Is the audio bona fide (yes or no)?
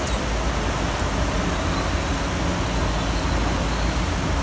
yes